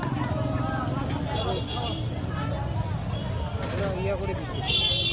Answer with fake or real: real